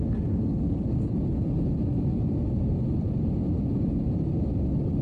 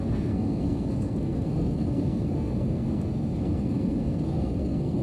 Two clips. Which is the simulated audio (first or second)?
second